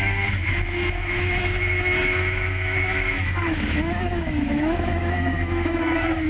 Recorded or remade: remade